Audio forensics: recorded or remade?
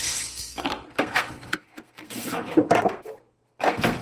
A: remade